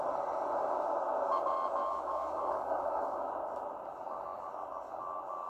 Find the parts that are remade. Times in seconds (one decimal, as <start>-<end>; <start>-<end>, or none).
1.8-3.3

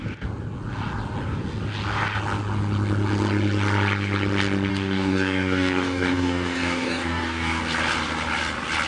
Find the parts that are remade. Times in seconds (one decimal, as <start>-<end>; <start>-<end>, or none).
4.7-7.6